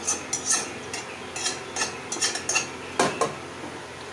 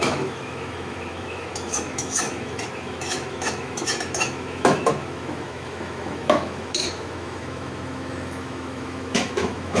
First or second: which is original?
first